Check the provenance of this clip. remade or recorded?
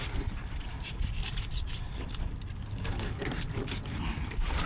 recorded